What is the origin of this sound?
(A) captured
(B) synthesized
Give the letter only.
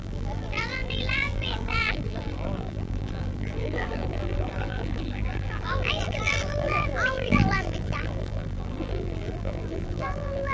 B